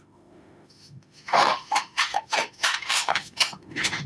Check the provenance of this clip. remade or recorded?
remade